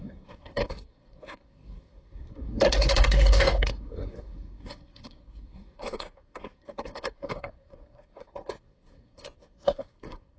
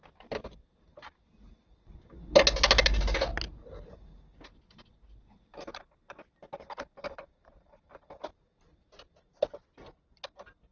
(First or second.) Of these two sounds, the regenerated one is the first